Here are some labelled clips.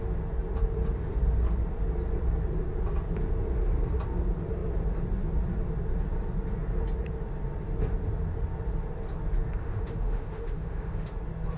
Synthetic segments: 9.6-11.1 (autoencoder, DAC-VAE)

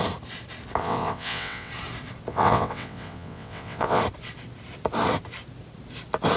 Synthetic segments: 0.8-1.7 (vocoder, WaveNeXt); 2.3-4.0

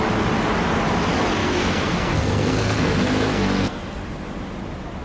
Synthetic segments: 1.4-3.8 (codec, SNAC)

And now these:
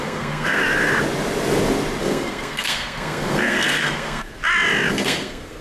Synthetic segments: 0.0-0.6 (codec, SNAC); 2.0-4.3; 4.9-5.6